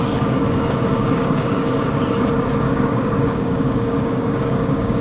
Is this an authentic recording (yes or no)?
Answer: no